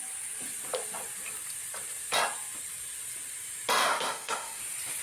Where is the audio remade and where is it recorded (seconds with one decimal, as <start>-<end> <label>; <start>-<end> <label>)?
0.0-3.8 recorded; 3.8-4.6 remade; 4.6-5.0 recorded